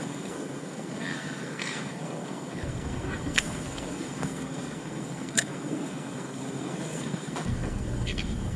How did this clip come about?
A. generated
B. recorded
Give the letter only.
A